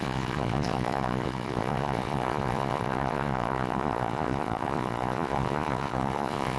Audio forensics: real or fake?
fake